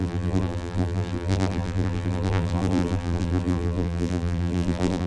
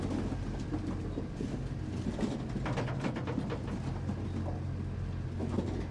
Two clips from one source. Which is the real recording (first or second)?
second